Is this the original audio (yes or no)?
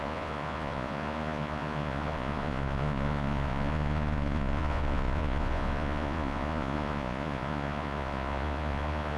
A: no